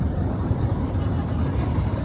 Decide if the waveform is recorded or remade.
remade